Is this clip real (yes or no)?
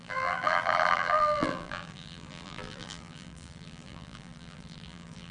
no